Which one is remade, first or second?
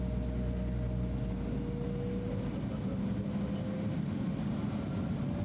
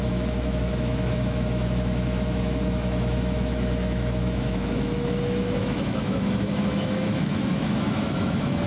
second